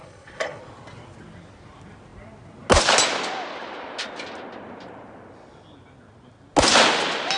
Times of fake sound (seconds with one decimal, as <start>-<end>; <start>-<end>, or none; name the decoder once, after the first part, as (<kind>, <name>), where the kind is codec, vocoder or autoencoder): 0.0-0.6 (codec, HILCodec)